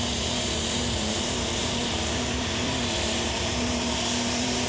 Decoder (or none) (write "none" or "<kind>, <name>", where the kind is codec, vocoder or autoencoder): vocoder, BigVGAN v2